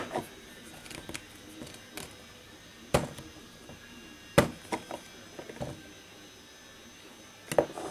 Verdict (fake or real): real